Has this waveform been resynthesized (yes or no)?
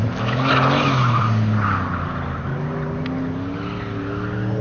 no